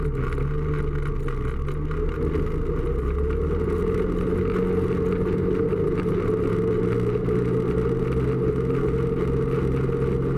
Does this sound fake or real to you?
real